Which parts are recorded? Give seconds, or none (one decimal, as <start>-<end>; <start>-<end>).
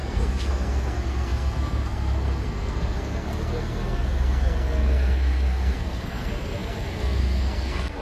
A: none